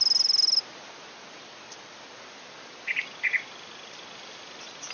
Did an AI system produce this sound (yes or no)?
no